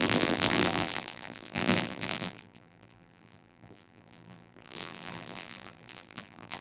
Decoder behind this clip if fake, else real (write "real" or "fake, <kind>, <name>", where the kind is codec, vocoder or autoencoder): fake, vocoder, BigVGAN v2